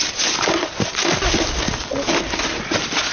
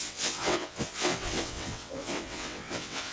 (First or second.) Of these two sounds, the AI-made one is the second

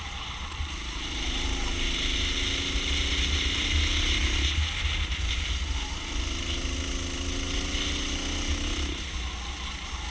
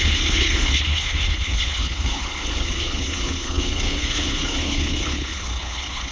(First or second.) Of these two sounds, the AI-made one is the second